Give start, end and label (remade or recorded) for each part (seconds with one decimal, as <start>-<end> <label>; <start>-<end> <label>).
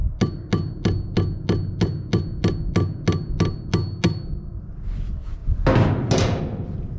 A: 0.0-7.0 recorded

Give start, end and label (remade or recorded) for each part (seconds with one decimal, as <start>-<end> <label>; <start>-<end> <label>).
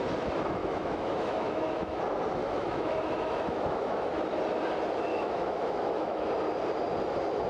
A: 0.0-0.6 recorded; 0.6-2.0 remade; 2.0-2.4 recorded; 2.4-4.1 remade; 4.1-5.1 recorded; 5.1-6.3 remade; 6.3-7.5 recorded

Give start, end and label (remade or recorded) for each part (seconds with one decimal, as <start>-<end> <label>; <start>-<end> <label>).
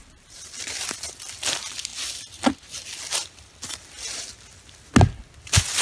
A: 0.0-5.8 recorded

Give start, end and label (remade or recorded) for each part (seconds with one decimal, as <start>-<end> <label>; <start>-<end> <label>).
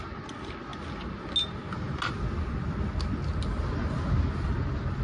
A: 0.0-5.0 recorded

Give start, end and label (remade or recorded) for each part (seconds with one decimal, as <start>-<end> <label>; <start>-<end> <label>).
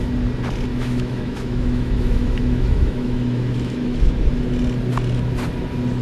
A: 0.0-0.7 recorded; 0.7-4.3 remade; 4.3-6.0 recorded